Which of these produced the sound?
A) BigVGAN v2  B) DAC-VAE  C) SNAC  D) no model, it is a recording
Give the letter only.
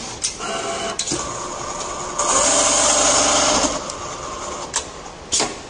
D